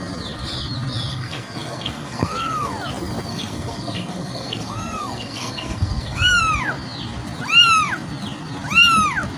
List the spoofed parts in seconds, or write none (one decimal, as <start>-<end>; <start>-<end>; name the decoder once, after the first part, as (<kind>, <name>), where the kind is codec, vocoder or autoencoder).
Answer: 1.1-2.7 (codec, SNAC); 3.3-6.4

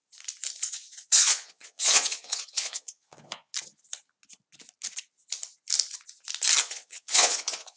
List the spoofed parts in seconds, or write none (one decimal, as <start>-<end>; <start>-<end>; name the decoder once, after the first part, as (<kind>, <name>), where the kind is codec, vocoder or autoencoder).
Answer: 0.6-3.5 (vocoder, Vocos); 6.6-7.8

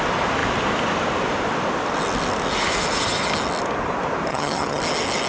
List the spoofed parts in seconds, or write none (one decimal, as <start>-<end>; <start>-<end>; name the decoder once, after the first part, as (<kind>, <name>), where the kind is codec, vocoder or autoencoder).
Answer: 4.3-4.8 (vocoder, HiFi-GAN)

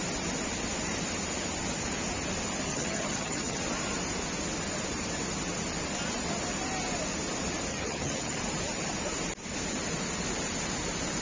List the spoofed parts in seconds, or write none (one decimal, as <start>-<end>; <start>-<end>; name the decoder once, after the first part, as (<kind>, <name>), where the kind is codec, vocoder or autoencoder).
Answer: 2.7-3.6 (vocoder, HiFi-GAN); 7.7-8.4